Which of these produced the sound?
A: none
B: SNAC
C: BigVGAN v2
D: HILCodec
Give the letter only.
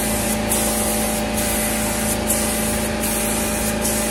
A